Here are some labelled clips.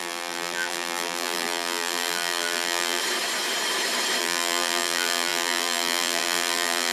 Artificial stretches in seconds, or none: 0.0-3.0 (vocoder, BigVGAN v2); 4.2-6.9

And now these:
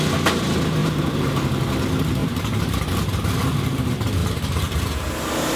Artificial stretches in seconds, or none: 0.8-1.5 (vocoder, BigVGAN v2); 2.2-2.8; 4.2-5.6

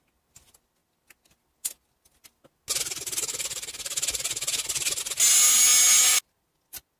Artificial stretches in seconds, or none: none

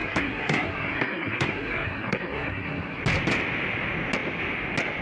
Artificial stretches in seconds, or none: 0.0-3.0 (codec, SNAC)

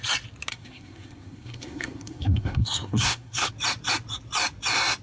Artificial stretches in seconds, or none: 0.5-3.5 (codec, SNAC)

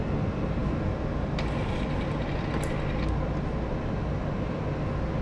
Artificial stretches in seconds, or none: none

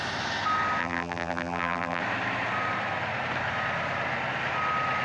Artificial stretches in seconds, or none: 0.8-2.0 (vocoder, BigVGAN v2)